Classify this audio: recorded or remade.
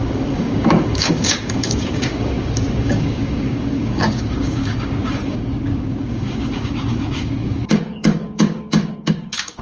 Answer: remade